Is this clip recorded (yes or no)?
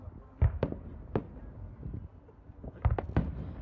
no